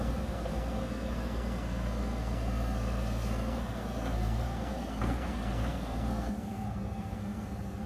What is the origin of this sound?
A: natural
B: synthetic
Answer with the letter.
B